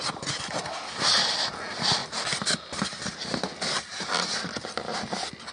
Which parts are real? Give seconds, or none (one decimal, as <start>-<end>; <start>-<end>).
0.0-5.5